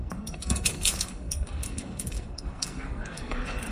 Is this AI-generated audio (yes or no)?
yes